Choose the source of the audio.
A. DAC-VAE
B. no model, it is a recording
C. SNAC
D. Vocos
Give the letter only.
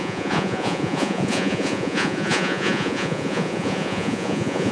D